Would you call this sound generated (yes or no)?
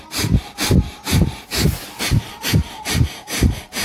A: yes